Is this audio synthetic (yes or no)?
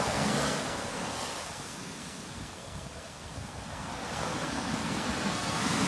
yes